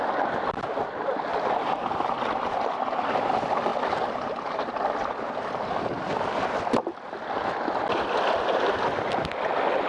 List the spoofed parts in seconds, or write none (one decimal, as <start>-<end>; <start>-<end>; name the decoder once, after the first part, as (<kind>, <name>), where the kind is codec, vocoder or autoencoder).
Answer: 1.3-2.7 (vocoder, BigVGAN v2)